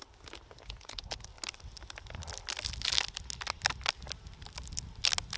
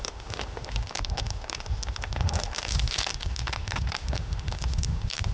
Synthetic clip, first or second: second